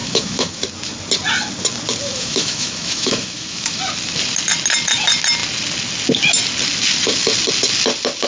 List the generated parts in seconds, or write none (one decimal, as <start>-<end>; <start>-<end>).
0.0-0.6; 2.1-3.8

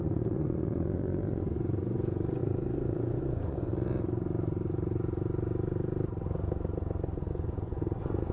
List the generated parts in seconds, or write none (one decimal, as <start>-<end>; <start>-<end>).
0.0-3.7; 7.3-8.3